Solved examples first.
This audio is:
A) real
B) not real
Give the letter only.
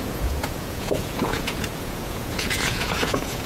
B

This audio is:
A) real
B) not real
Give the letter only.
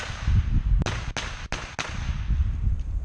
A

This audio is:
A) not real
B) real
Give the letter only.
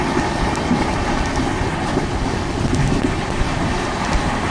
B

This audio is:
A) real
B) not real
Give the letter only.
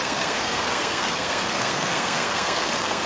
B